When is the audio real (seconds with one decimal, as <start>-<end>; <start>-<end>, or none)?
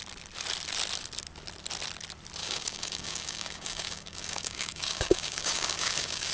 0.0-2.4